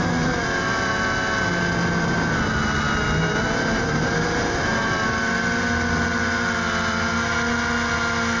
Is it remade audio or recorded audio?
recorded